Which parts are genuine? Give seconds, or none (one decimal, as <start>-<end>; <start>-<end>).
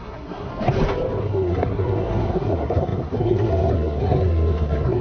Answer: 0.5-1.2